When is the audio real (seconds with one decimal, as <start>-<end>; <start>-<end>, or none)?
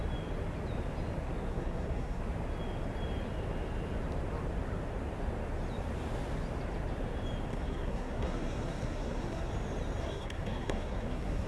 0.0-1.5; 2.2-7.5; 9.5-10.0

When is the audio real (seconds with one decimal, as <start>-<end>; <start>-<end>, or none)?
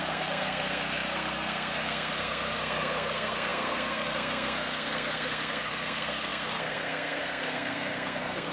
none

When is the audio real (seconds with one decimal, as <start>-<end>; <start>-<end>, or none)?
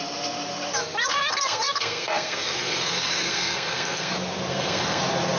0.0-1.0; 4.1-4.5; 5.0-5.4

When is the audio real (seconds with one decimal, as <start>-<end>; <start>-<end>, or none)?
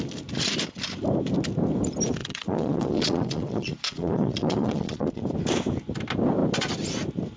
0.0-2.2; 5.2-7.4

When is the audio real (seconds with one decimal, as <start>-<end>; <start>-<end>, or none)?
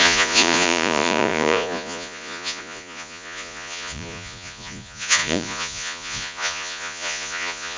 none